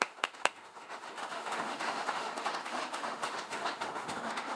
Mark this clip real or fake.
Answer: fake